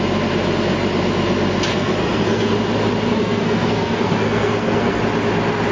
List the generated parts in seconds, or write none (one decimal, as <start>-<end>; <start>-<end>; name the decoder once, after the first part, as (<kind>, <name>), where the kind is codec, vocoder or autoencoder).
1.7-2.5 (codec, SNAC); 3.1-5.0